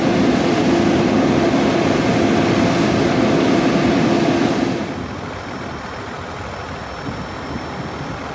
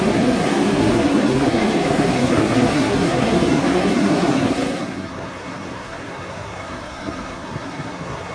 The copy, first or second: second